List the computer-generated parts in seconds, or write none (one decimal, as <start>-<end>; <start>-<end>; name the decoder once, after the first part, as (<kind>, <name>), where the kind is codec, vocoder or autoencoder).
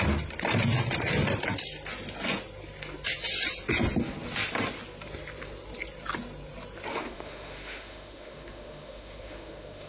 6.9-9.9 (autoencoder, DAC-VAE)